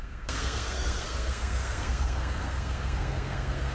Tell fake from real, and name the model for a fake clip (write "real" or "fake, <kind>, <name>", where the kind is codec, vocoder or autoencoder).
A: fake, codec, SNAC